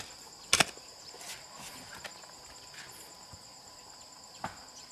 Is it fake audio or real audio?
real